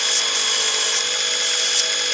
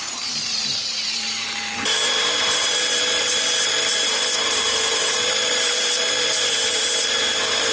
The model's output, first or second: second